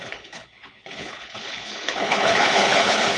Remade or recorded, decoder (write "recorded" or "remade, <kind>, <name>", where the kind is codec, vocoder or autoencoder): remade, codec, HILCodec